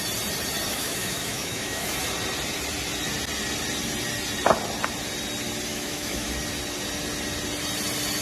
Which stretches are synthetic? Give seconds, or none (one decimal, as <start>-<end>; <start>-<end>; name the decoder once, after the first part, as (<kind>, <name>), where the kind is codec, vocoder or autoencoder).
0.7-1.9 (autoencoder, DAC-VAE); 5.7-6.3